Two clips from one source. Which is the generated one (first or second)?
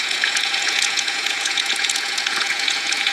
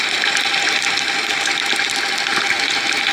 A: first